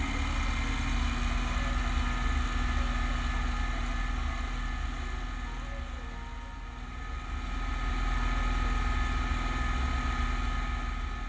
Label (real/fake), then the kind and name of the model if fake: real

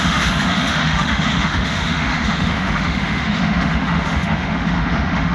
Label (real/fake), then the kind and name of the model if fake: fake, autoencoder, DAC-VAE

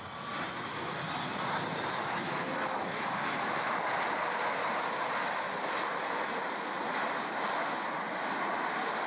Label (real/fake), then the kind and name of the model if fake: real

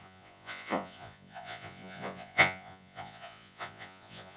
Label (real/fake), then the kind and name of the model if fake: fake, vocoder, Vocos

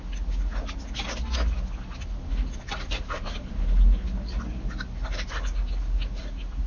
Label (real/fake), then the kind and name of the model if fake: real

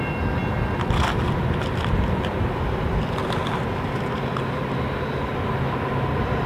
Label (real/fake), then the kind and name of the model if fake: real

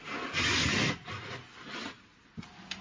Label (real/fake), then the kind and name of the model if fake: real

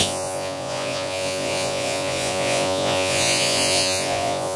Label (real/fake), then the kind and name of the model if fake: fake, vocoder, Vocos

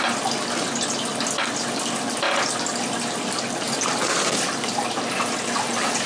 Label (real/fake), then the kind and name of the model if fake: real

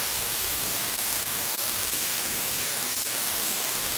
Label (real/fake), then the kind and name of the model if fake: fake, codec, DAC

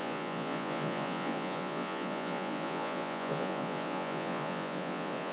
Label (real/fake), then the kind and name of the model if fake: fake, vocoder, Vocos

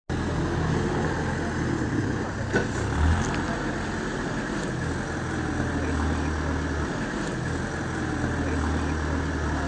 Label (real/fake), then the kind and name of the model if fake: real